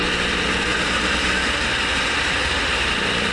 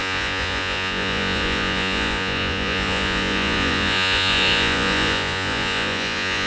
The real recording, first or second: first